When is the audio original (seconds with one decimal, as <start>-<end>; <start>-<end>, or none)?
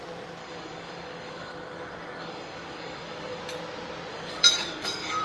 0.0-0.4; 3.4-4.1